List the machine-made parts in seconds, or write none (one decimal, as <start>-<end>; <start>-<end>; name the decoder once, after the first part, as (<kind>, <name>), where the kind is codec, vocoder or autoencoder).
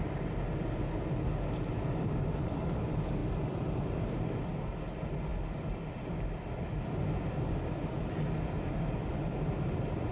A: none